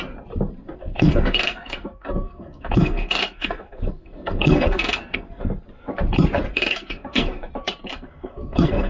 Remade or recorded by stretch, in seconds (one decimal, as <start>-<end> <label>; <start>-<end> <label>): 0.0-0.7 recorded; 0.7-5.4 remade; 5.4-6.5 recorded; 6.5-7.5 remade; 7.5-7.9 recorded; 7.9-8.9 remade